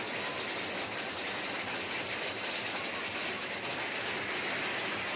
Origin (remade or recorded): recorded